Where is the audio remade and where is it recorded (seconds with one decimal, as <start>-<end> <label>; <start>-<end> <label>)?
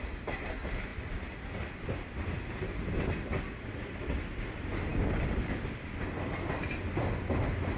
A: 0.0-0.9 recorded; 0.9-2.5 remade; 2.5-7.8 recorded